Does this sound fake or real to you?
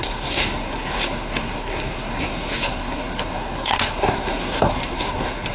fake